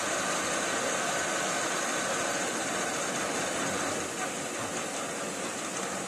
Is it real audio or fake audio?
real